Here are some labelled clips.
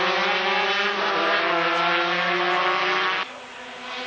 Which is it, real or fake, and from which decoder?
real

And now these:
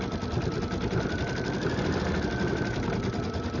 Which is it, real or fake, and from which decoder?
real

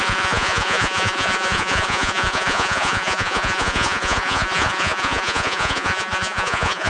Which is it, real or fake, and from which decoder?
fake, vocoder, Vocos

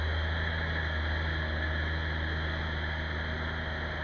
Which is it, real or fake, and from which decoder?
real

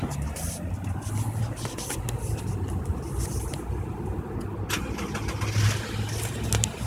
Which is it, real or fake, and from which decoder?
real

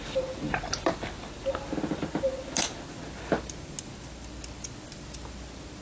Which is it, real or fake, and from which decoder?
real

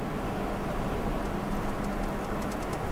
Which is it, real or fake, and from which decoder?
real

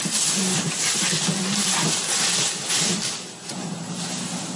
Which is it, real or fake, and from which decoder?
real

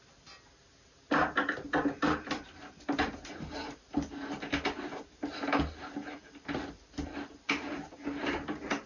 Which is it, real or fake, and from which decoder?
real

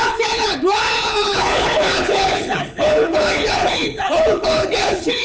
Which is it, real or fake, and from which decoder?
fake, codec, HILCodec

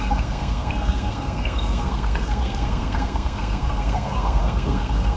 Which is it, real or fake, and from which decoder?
fake, codec, SNAC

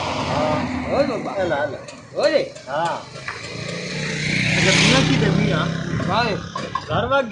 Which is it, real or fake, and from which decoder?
real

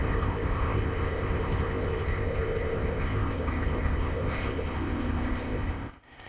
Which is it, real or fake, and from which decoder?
fake, codec, ZipCodec